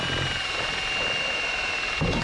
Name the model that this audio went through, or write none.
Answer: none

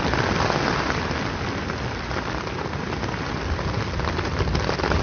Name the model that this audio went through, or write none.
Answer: none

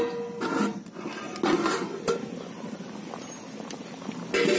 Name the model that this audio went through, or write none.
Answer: none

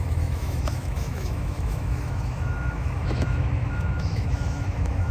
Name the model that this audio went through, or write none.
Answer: autoencoder, DAC-VAE